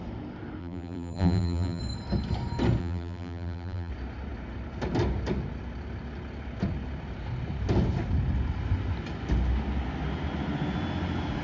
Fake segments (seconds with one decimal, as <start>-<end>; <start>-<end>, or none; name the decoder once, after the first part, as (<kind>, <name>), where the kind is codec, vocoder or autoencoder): 0.6-1.8 (vocoder, BigVGAN v2); 2.8-3.9